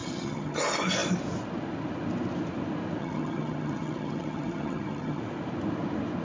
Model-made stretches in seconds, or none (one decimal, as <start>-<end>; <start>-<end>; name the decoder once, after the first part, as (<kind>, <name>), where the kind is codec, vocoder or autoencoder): 0.0-0.6 (vocoder, HiFi-GAN); 3.0-5.2